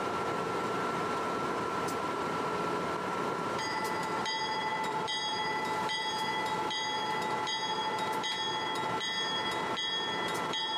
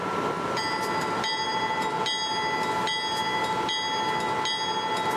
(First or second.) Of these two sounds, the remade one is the first